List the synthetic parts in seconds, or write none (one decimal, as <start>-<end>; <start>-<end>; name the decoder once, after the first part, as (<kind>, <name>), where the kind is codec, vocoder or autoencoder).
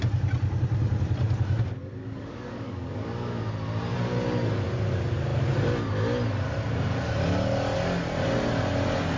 2.0-3.4 (codec, DAC)